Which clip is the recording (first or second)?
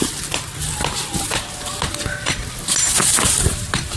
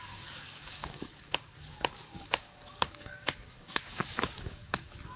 first